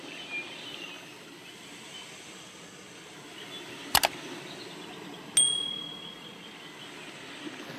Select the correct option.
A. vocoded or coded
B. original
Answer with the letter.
B